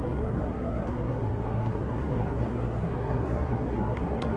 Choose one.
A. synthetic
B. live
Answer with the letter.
A